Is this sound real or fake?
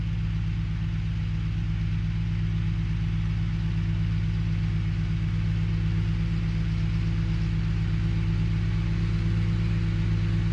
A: real